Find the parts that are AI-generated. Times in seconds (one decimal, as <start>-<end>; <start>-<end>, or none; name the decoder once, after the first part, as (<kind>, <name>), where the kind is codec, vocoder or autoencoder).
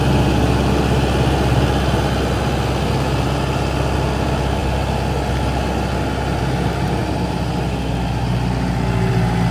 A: none